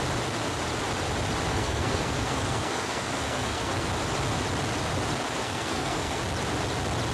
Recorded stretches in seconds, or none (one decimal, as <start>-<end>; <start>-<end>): 0.0-1.5; 3.9-5.4; 6.2-7.1